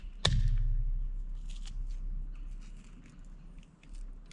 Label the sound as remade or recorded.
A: recorded